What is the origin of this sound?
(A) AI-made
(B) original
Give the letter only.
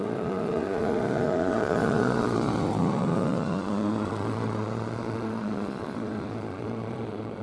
A